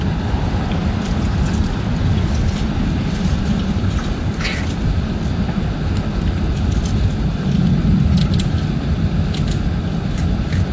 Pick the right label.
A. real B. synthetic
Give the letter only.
A